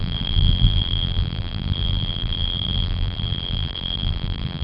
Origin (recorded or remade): remade